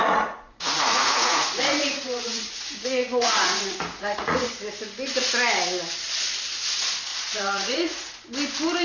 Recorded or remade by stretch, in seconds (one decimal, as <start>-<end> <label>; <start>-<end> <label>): 0.0-4.5 remade; 4.5-7.1 recorded; 7.1-8.1 remade; 8.1-8.8 recorded